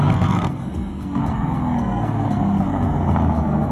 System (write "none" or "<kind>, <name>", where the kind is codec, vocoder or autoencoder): codec, SNAC